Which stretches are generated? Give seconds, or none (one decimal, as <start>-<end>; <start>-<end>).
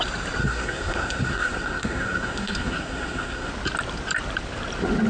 0.4-3.5